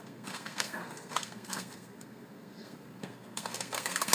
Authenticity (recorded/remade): remade